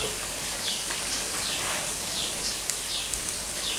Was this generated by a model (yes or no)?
yes